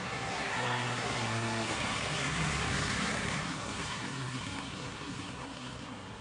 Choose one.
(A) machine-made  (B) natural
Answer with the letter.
A